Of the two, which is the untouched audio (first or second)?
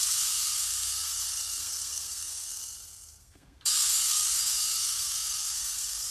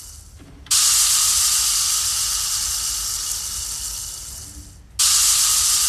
second